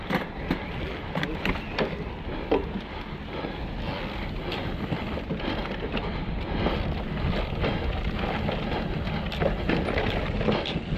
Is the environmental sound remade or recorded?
recorded